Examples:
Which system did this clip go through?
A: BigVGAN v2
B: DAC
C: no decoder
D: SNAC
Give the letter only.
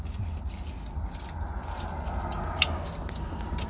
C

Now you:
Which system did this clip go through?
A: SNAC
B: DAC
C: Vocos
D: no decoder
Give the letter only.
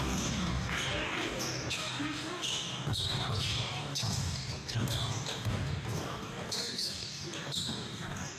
B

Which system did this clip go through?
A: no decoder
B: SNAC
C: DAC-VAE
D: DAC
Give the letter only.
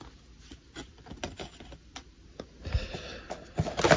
A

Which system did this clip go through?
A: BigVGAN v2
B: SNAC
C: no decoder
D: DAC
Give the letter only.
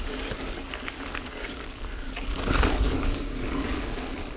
D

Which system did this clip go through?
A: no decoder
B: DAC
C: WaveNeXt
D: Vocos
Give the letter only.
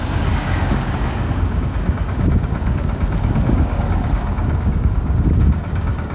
B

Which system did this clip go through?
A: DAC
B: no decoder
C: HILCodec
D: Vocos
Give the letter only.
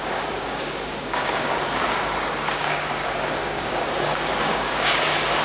A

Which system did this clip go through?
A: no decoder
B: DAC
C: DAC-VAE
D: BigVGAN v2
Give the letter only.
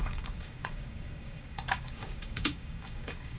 B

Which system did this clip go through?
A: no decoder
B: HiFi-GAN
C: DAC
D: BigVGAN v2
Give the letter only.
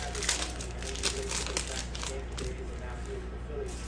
A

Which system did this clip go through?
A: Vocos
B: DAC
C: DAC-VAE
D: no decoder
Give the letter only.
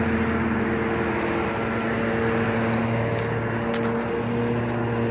D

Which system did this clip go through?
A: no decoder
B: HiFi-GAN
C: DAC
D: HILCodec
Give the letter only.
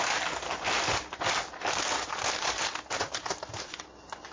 A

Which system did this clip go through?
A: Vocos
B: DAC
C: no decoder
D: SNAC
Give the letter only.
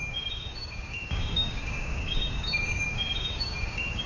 B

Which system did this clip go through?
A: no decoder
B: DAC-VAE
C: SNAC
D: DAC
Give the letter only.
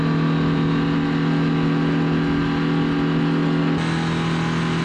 A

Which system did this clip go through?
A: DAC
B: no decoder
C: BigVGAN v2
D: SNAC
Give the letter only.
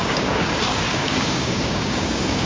A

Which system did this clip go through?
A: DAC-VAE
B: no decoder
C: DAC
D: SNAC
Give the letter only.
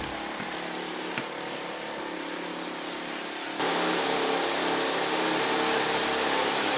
B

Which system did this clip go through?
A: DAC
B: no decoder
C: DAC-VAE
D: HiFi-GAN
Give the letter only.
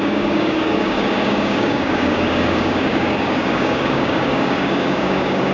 A